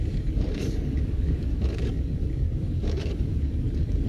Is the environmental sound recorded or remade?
remade